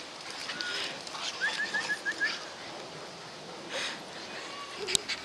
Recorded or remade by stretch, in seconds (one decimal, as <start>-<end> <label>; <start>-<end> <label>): 0.0-5.2 recorded